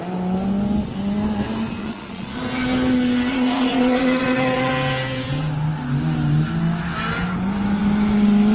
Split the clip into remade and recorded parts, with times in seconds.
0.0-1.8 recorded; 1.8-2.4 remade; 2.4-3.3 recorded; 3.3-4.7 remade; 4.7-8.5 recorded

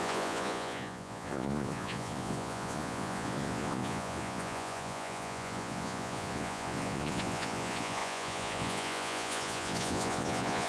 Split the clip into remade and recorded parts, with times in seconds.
0.0-10.7 remade